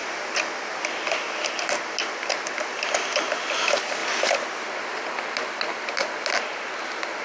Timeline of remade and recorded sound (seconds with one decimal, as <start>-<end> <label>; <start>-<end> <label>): 0.0-7.2 recorded